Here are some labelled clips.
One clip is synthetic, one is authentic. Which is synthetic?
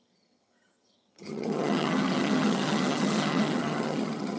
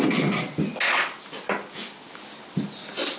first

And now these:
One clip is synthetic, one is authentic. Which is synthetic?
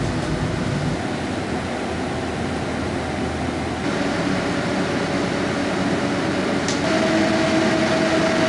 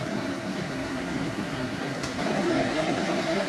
second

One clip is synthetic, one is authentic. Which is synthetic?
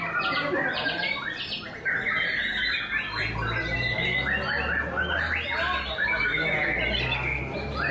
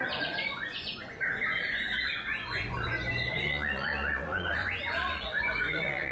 second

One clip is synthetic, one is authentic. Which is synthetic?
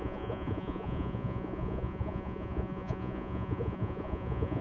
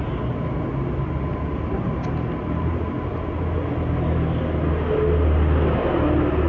first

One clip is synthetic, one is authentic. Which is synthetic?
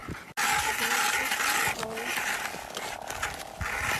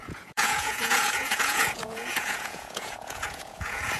second